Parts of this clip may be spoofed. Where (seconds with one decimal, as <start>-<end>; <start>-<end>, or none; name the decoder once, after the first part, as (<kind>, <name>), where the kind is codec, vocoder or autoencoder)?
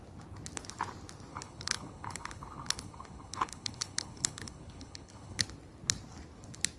1.3-5.4 (codec, HILCodec)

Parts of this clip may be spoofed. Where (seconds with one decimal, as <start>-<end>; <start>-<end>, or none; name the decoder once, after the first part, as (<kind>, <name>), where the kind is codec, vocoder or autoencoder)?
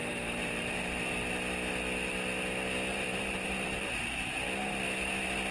0.0-1.1 (vocoder, BigVGAN v2); 2.9-4.3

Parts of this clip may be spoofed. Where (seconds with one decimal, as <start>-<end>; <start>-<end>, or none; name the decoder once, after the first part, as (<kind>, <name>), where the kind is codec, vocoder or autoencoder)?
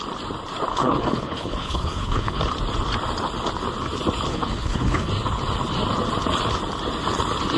0.7-2.4 (codec, HILCodec); 4.3-5.1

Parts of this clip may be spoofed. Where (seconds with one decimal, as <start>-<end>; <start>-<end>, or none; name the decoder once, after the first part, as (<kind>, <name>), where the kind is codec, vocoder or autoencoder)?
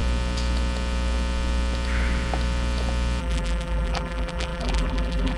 3.2-5.4 (vocoder, BigVGAN v2)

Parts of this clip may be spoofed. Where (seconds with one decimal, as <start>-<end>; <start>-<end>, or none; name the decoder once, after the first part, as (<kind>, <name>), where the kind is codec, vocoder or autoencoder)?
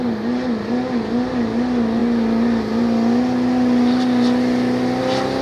none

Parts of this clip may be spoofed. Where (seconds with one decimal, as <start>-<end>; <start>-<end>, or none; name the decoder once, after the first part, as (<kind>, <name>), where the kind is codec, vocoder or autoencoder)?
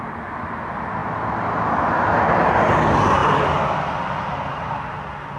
none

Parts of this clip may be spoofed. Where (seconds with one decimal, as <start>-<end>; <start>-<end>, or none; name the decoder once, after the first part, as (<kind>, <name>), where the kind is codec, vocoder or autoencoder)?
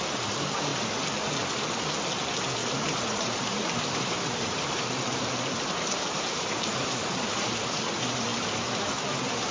2.6-7.8 (vocoder, BigVGAN v2)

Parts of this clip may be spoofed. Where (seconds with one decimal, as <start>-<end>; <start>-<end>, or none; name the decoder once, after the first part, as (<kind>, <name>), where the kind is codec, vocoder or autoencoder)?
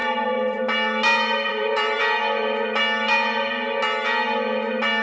0.0-0.6 (vocoder, BigVGAN v2); 1.5-2.0